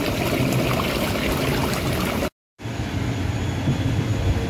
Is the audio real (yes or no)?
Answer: yes